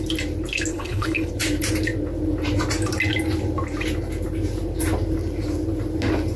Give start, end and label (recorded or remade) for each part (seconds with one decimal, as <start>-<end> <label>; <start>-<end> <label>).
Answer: 0.0-0.7 recorded; 0.7-1.3 remade; 1.3-6.4 recorded